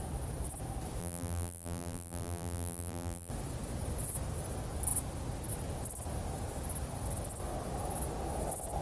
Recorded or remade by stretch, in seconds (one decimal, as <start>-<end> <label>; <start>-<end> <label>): 0.0-1.0 recorded; 1.0-3.3 remade; 3.3-8.8 recorded